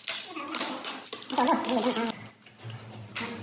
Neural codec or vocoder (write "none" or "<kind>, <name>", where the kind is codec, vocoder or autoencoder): none